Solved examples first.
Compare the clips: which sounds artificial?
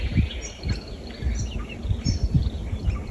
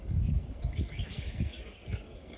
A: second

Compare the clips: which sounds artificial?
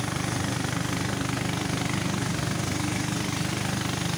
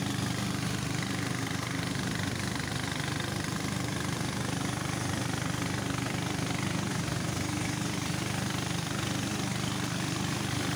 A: second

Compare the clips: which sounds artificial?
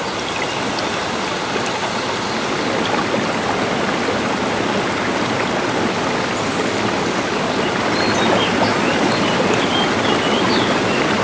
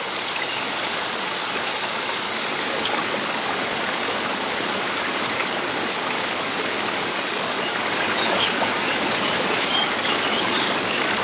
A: second